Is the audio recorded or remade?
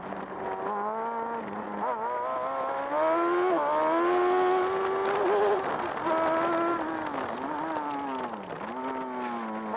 recorded